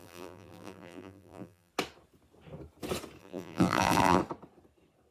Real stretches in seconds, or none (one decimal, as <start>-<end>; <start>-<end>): 1.7-3.2; 4.2-5.1